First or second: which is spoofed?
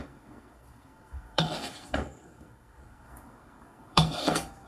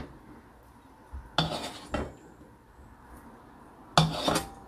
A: first